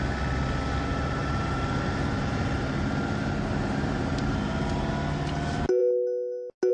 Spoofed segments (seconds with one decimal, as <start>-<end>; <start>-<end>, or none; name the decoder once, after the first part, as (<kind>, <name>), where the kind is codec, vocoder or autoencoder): 0.9-4.9 (vocoder, BigVGAN v2)